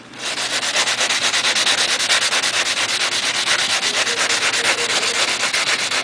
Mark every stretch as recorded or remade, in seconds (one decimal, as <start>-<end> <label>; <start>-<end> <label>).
0.0-0.8 remade; 0.8-4.4 recorded; 4.4-6.0 remade